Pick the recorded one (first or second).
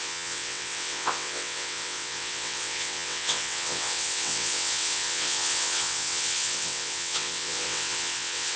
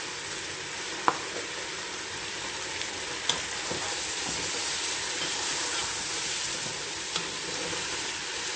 second